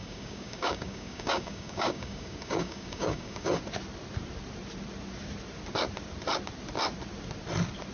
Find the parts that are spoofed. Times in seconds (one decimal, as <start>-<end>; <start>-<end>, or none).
0.0-3.6